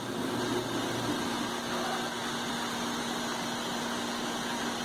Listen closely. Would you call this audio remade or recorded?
recorded